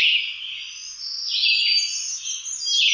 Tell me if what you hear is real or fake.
real